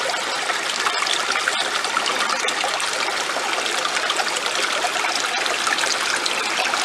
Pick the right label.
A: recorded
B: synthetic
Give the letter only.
A